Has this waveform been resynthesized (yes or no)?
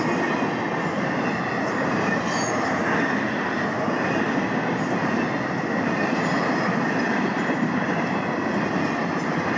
no